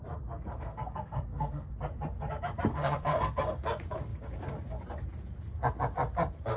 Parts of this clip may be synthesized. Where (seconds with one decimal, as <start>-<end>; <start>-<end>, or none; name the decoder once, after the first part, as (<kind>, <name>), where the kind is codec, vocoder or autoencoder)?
0.5-1.7 (codec, SNAC); 2.7-3.6